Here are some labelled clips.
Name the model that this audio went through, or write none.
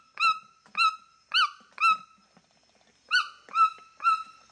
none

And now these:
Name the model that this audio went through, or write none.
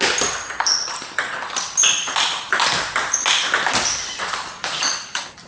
none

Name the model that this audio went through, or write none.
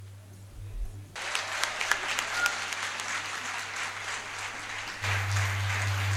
none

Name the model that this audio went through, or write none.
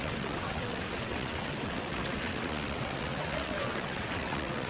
vocoder, WaveNeXt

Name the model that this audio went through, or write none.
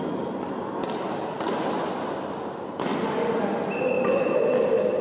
none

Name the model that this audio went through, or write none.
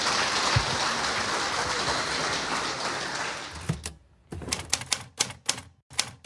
none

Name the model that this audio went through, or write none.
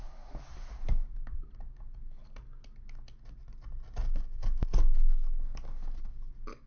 none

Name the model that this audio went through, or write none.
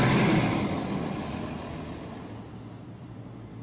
none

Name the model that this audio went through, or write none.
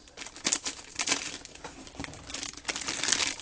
vocoder, BigVGAN v2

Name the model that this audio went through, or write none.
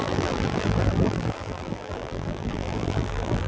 vocoder, BigVGAN v2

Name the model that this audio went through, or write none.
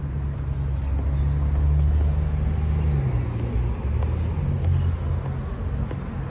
none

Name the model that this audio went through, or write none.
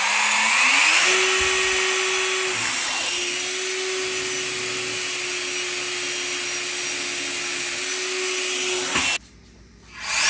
none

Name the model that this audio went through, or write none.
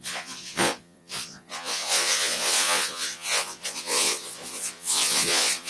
vocoder, Vocos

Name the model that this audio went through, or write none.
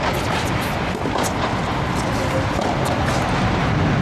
none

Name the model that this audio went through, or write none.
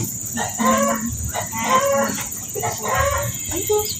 none